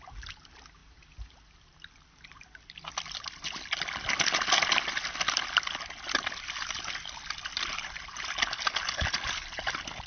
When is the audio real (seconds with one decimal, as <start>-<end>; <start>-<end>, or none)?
0.0-10.1